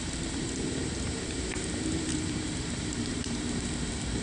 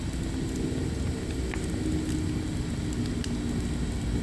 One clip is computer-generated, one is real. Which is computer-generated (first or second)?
first